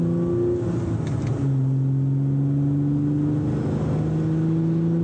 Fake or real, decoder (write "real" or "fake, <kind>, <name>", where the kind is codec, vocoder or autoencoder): real